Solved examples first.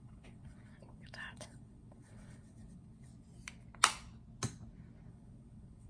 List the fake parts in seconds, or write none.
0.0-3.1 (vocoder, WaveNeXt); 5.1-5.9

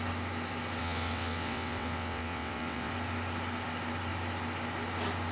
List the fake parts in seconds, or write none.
0.8-2.9 (vocoder, WaveNeXt)

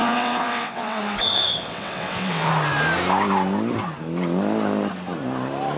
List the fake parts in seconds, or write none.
0.0-2.5 (vocoder, WaveNeXt)

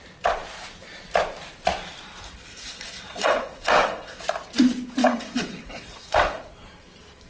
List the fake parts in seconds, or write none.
2.5-4.2 (vocoder, WaveNeXt); 5.0-6.5

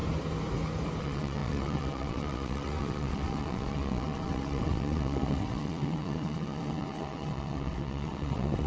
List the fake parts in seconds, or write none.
1.0-8.7 (vocoder, WaveNeXt)

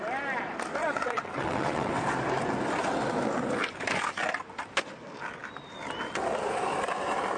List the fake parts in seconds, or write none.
0.8-1.9 (vocoder, WaveNeXt)

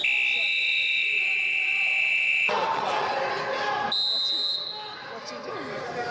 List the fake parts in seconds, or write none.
0.4-3.2 (vocoder, WaveNeXt)

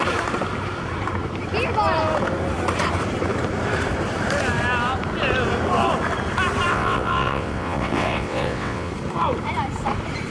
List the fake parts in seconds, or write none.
6.7-8.9 (vocoder, WaveNeXt)